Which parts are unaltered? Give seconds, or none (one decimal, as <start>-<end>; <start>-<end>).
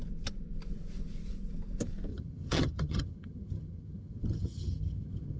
0.0-2.1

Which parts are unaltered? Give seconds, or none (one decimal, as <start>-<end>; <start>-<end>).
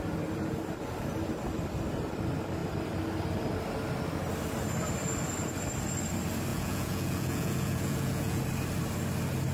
0.0-6.5; 8.4-9.5